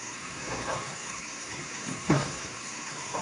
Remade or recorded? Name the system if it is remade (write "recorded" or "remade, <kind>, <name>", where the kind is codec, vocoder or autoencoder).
remade, codec, SNAC